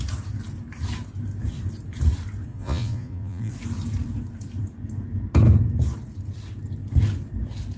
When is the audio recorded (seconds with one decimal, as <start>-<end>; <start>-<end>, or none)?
0.0-2.5; 3.5-7.8

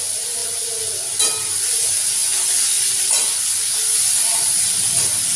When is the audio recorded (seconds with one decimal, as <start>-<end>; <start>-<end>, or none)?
0.0-5.4